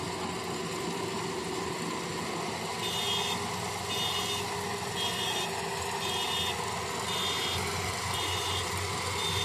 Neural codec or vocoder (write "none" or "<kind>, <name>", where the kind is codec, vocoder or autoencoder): none